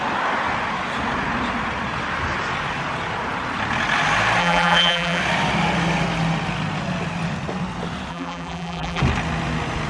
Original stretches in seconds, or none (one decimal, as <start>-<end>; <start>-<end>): 0.0-4.4; 5.2-8.1; 9.0-9.9